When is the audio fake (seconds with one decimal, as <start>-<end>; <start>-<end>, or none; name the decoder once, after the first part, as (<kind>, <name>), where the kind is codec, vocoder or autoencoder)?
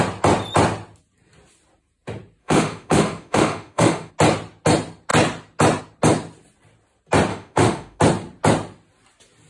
2.4-4.1 (autoencoder, DAC-VAE); 7.3-8.0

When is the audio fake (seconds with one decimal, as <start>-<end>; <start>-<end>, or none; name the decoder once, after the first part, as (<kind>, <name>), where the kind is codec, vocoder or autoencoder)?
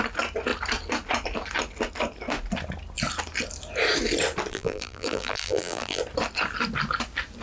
4.5-6.0 (vocoder, BigVGAN v2)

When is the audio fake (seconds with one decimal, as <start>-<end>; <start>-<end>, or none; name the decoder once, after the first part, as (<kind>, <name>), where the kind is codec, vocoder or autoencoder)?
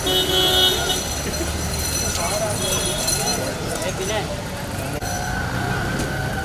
none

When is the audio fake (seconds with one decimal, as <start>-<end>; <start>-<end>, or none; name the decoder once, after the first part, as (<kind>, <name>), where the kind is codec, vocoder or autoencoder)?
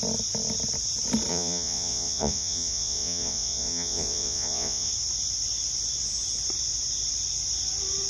1.3-4.9 (vocoder, Vocos)